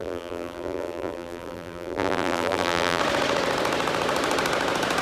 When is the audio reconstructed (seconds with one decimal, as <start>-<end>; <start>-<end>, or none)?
0.0-3.0